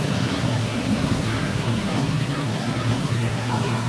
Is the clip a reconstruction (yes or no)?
yes